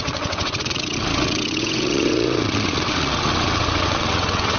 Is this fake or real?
fake